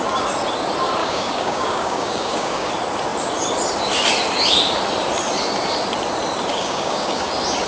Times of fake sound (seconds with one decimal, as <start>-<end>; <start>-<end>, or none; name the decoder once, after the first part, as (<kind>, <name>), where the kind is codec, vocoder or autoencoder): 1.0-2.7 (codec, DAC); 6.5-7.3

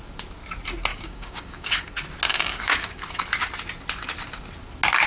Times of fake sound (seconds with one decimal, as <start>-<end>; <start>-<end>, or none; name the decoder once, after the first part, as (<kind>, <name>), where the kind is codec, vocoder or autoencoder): 0.9-1.9 (codec, DAC); 2.3-3.2

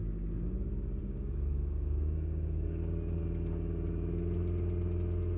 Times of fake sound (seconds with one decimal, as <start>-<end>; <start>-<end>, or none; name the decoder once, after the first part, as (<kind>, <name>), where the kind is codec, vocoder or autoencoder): 1.0-3.2 (codec, DAC)